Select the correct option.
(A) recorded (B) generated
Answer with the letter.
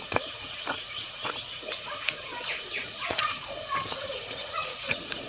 B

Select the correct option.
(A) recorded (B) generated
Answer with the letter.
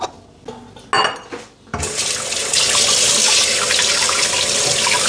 A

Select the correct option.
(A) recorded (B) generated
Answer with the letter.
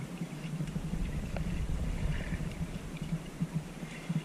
B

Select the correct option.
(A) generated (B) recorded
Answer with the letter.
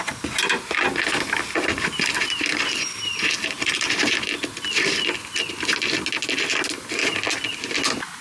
B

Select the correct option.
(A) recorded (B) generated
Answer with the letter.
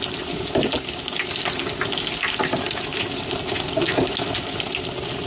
A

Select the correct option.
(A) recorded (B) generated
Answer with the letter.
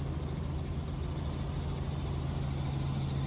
A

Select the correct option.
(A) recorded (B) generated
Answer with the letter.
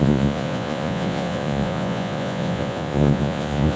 B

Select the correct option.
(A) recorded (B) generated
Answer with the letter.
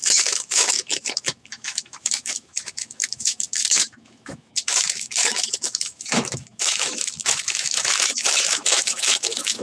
B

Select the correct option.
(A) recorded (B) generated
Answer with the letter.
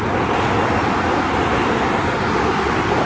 A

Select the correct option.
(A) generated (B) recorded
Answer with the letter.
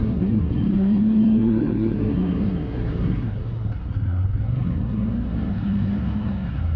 A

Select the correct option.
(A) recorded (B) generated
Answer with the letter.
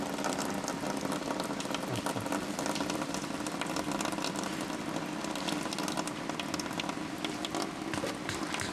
B